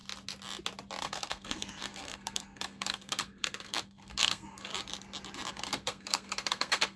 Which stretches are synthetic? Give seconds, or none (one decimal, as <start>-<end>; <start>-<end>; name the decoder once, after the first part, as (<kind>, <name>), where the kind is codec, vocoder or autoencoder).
1.0-4.7 (codec, SNAC); 5.5-7.0